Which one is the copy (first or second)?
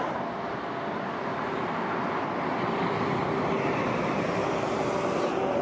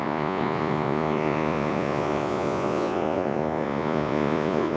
second